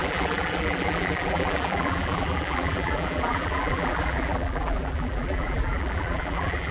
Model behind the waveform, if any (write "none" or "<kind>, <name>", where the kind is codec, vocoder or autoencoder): vocoder, BigVGAN v2